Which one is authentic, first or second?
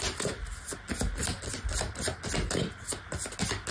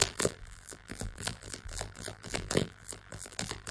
first